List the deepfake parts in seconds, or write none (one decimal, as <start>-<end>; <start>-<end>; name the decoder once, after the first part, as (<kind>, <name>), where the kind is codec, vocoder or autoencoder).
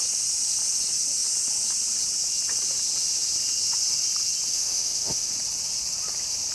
4.5-5.3 (autoencoder, DAC-VAE)